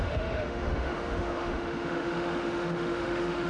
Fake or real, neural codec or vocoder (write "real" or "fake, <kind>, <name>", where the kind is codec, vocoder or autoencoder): fake, autoencoder, DAC-VAE